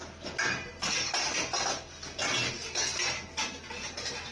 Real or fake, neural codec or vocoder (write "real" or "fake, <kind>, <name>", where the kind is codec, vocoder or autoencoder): real